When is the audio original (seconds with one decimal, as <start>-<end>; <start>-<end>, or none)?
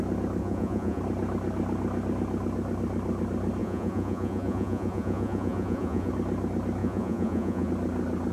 0.0-0.4; 1.0-3.6; 6.1-6.8; 7.7-8.3